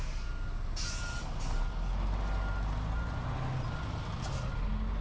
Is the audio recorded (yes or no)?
yes